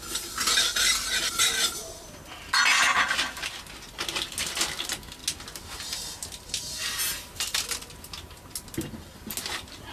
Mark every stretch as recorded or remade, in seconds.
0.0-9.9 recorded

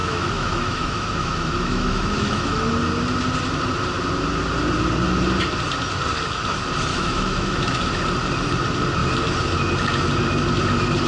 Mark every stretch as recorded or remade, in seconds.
0.0-2.7 remade; 2.7-6.9 recorded; 6.9-7.8 remade; 7.8-11.1 recorded

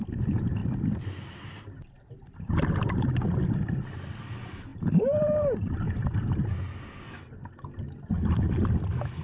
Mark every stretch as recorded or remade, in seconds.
0.0-9.2 recorded

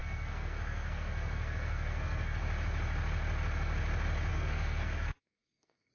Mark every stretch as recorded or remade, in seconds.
0.0-2.4 remade; 2.4-4.3 recorded; 4.3-5.9 remade

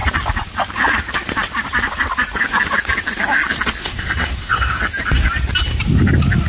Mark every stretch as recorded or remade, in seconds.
0.0-3.8 recorded; 3.8-4.8 remade; 4.8-6.5 recorded